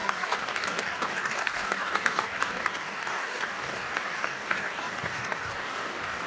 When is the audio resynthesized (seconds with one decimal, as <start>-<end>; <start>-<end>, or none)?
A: 0.0-6.3